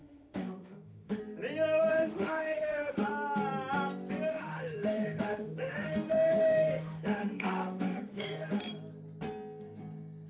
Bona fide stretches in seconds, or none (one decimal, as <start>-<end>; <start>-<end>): 1.2-1.9; 3.1-4.3; 8.6-10.3